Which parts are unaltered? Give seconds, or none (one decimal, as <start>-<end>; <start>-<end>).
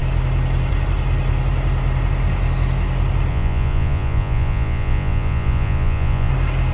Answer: 0.0-3.3; 6.3-6.7